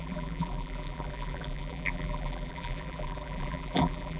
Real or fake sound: fake